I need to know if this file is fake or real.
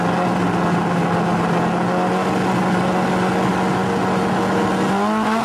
real